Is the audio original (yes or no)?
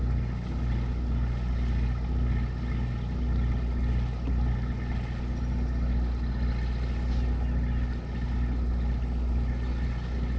yes